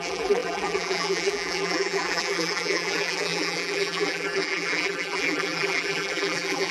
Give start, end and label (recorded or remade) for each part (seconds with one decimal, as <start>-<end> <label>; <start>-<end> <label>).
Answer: 0.0-6.7 remade